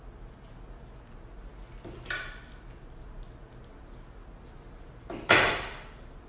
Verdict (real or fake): real